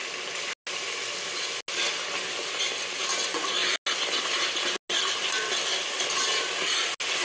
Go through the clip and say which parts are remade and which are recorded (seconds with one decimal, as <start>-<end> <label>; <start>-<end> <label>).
0.0-7.2 recorded